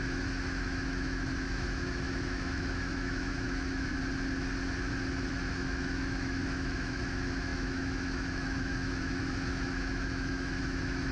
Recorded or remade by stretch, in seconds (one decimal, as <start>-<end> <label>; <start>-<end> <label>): 0.0-3.9 remade; 3.9-5.3 recorded; 5.3-11.1 remade